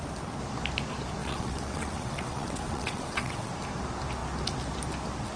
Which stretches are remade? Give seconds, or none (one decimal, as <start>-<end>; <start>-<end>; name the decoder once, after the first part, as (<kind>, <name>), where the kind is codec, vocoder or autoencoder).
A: 1.2-3.5 (vocoder, WaveNeXt)